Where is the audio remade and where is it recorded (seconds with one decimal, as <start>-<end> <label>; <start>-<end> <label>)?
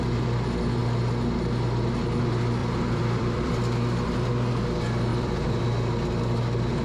0.0-2.6 recorded; 2.6-3.5 remade; 3.5-5.1 recorded; 5.1-5.6 remade; 5.6-6.8 recorded